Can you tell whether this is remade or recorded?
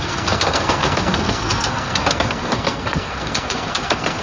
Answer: remade